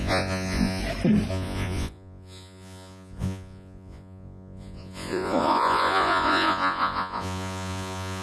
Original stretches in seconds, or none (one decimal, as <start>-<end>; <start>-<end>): 0.8-1.3